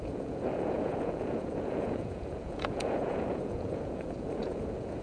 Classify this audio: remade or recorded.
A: remade